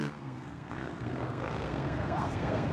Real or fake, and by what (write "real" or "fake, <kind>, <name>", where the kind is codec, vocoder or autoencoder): fake, codec, SNAC